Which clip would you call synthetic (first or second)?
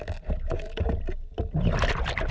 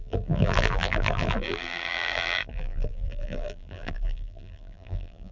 second